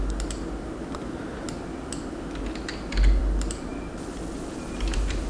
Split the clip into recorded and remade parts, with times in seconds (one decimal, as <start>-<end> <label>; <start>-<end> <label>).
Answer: 0.0-5.3 recorded